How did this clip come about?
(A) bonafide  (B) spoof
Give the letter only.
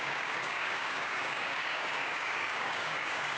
B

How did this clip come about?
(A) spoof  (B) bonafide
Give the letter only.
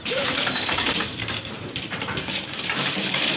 A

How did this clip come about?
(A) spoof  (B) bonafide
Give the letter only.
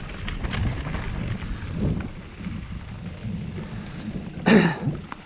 B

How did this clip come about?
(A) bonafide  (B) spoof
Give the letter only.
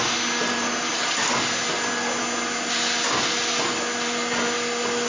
A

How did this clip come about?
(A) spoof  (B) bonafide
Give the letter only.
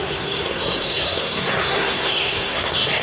A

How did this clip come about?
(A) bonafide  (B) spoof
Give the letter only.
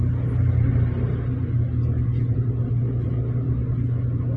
A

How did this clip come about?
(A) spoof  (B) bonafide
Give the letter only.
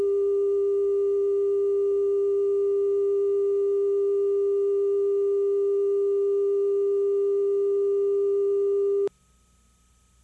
B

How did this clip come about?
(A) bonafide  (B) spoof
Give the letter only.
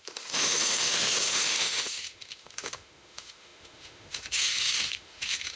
B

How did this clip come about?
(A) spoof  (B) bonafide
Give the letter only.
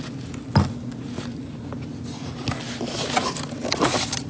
B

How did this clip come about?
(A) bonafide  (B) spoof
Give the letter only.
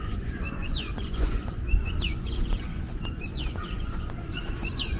B